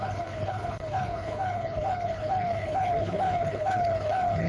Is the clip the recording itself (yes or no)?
no